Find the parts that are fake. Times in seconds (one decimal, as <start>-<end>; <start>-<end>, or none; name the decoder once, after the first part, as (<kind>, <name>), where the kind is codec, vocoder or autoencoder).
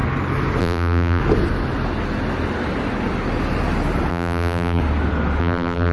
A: 0.6-1.2 (vocoder, BigVGAN v2); 4.1-4.8; 5.4-5.9